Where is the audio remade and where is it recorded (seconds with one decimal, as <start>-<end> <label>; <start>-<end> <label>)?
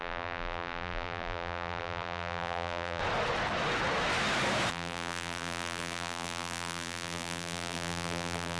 0.0-3.0 remade; 3.0-4.7 recorded; 4.7-8.6 remade